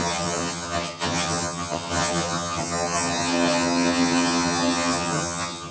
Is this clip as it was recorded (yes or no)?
no